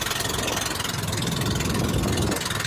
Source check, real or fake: real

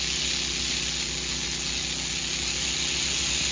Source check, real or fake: real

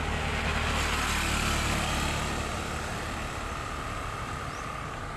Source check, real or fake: real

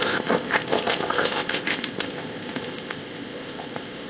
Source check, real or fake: fake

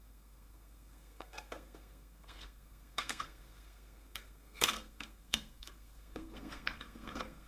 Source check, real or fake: fake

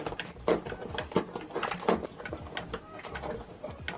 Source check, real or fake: real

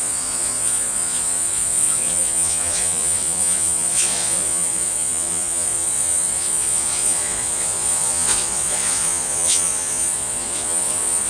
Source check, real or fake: fake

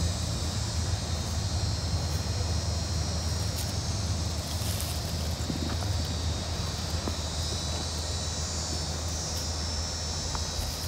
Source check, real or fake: real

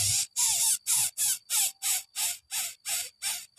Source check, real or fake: real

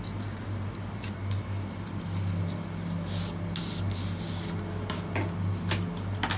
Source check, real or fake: real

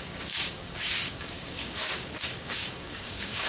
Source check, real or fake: fake